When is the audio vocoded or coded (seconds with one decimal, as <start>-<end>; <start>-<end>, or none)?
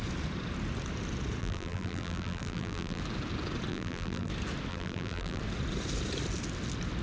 1.4-3.0; 3.7-4.3; 4.7-5.4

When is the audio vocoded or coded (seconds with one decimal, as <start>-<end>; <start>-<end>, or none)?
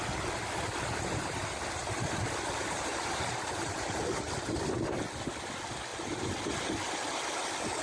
1.8-4.5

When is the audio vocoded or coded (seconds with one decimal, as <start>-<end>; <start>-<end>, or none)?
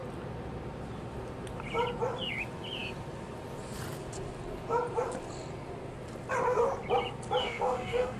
7.4-8.2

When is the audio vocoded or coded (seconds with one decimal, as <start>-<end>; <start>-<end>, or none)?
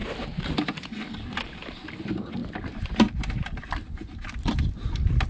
none